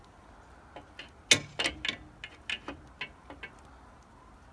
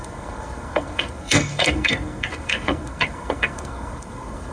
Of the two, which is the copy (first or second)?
second